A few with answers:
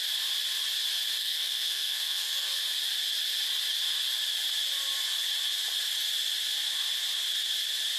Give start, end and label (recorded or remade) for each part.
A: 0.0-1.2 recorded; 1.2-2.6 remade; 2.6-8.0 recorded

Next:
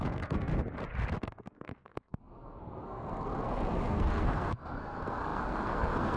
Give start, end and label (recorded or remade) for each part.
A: 0.0-0.5 remade; 0.5-1.2 recorded; 1.2-6.2 remade

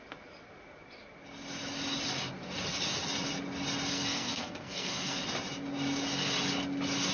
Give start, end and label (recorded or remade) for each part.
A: 0.0-3.9 recorded; 3.9-5.2 remade; 5.2-7.1 recorded

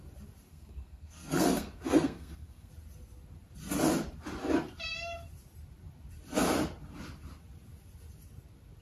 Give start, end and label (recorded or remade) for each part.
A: 0.0-0.5 recorded; 0.5-2.7 remade; 2.7-8.8 recorded

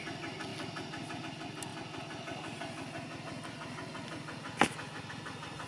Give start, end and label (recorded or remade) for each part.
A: 0.0-5.7 recorded

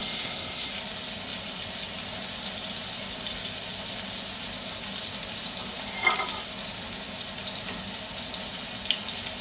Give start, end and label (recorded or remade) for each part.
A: 0.0-0.7 remade; 0.7-9.4 recorded